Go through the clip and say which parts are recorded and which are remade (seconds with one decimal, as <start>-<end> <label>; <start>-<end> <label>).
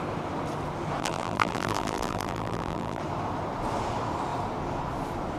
0.0-1.0 recorded; 1.0-3.0 remade; 3.0-5.4 recorded